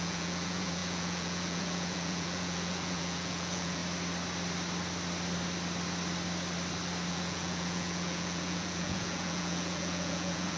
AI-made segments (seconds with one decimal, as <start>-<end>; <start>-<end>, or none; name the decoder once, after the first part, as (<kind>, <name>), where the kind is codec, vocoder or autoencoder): 0.0-3.8 (vocoder, Vocos); 7.1-10.6